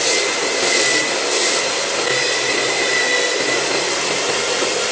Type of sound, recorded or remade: recorded